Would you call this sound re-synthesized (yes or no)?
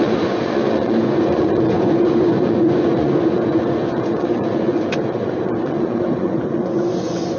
yes